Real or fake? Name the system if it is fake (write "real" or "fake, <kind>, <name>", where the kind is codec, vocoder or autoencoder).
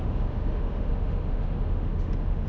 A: fake, autoencoder, DAC-VAE